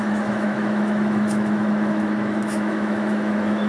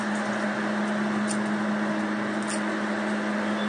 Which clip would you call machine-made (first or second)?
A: first